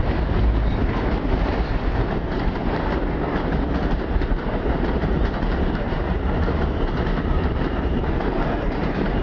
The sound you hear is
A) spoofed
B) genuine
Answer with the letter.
A